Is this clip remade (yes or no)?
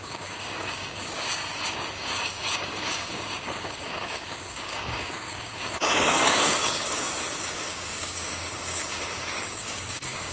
yes